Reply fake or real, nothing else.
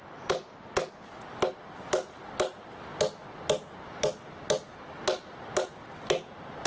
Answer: real